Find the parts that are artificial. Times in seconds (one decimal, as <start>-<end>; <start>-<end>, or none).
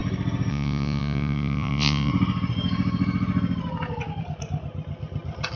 0.5-2.1